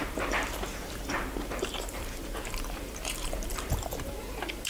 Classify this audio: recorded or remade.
remade